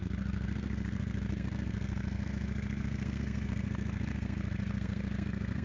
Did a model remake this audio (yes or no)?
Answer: yes